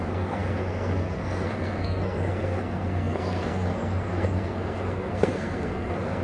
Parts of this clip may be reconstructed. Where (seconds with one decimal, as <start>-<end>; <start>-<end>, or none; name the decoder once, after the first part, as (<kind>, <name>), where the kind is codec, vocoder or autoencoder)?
0.0-6.2 (codec, SNAC)